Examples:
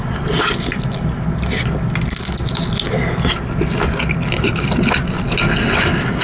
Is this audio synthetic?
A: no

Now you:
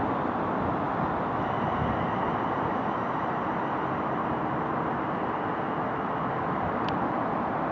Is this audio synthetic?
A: no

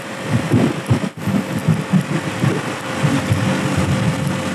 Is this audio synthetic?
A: no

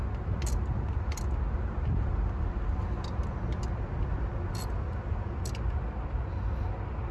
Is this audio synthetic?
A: no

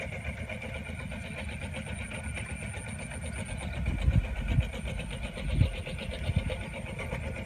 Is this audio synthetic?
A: no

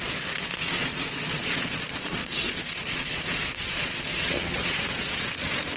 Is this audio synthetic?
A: yes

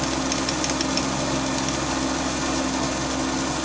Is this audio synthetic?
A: no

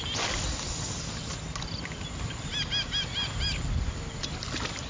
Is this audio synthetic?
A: no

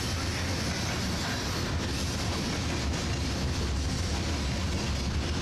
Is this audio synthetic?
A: no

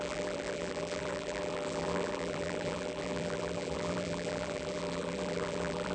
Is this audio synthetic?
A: yes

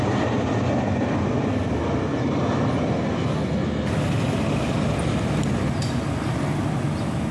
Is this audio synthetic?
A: no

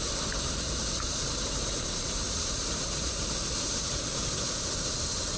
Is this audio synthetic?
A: yes